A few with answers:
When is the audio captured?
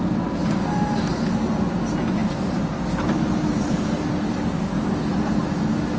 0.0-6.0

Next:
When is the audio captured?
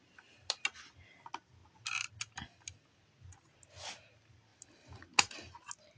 0.0-6.0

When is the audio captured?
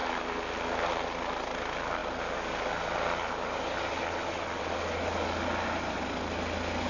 0.0-6.9